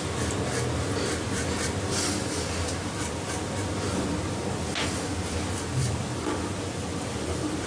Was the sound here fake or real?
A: real